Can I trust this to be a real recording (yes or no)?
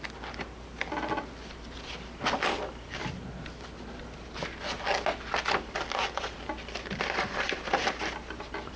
yes